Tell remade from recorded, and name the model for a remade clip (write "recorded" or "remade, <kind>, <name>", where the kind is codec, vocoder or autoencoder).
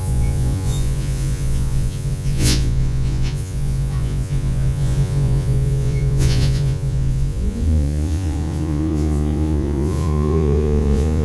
remade, vocoder, Vocos